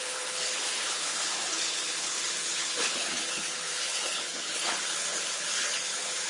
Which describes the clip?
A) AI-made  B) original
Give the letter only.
A